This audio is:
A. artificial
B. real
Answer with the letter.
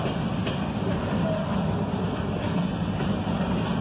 B